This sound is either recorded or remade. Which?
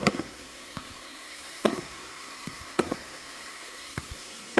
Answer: remade